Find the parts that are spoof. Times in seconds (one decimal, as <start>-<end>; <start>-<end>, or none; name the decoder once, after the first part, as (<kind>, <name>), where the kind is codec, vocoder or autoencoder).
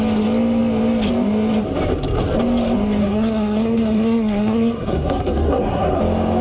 3.0-6.0 (codec, SNAC)